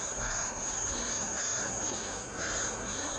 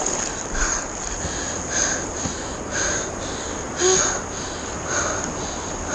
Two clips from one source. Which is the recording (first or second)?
second